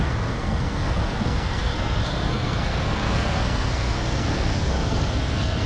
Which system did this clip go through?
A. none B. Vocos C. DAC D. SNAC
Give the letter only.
D